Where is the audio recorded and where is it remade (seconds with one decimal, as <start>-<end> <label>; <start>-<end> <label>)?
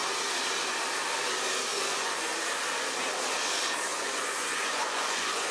0.0-1.7 recorded; 1.7-2.3 remade; 2.3-3.9 recorded; 3.9-5.5 remade